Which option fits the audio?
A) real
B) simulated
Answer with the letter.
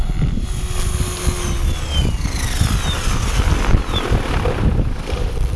A